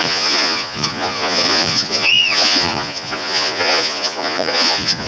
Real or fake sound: fake